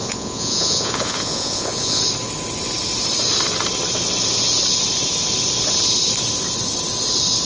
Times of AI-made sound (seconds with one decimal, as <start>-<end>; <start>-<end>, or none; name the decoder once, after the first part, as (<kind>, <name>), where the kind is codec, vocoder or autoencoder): 0.0-2.0 (vocoder, Vocos)